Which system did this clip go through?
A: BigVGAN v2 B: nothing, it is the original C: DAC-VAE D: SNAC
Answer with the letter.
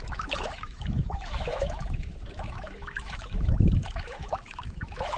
C